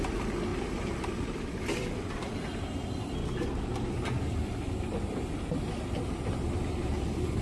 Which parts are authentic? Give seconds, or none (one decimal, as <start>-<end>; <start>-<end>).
0.0-0.5; 2.0-7.4